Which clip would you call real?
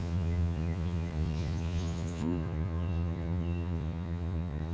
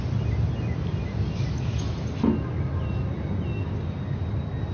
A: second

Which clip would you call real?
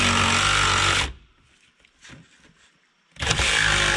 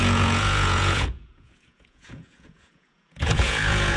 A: first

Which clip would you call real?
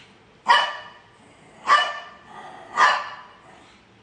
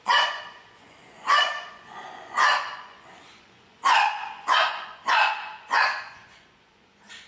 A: first